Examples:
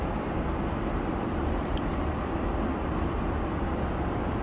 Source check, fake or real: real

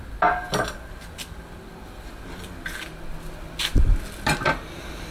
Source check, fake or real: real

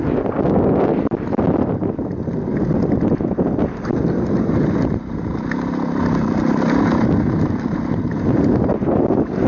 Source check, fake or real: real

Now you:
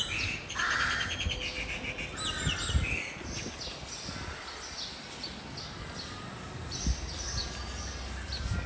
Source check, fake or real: real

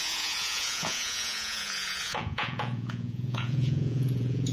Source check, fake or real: fake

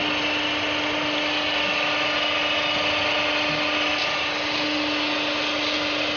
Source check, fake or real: real